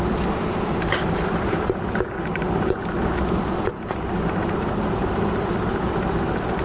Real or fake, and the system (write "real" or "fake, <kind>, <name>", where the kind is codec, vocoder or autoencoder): real